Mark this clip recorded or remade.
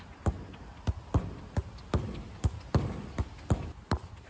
recorded